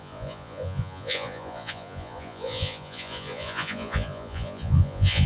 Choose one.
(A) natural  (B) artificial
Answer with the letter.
B